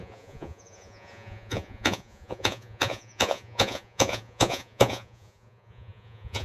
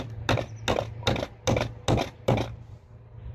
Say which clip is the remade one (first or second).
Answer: first